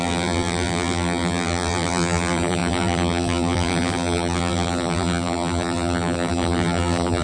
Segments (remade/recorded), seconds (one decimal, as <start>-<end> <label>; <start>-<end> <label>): 0.0-7.2 remade